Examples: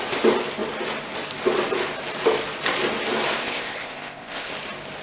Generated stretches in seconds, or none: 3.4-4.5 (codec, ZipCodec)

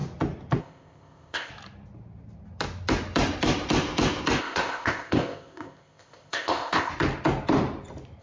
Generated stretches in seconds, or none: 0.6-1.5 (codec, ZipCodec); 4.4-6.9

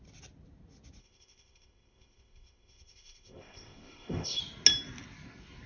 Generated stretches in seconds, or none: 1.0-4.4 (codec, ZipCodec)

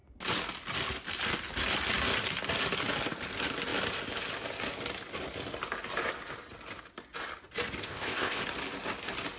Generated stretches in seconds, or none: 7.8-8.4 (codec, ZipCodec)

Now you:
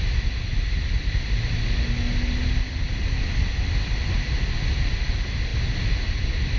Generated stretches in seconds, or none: none

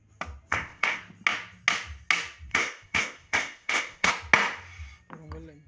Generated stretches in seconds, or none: 0.5-1.0 (codec, ZipCodec); 2.5-4.1